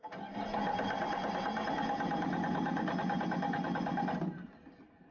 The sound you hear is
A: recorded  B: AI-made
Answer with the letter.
A